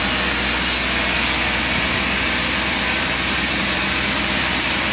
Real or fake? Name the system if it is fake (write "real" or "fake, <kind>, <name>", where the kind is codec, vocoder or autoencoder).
fake, vocoder, BigVGAN v2